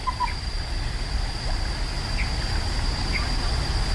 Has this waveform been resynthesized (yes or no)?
no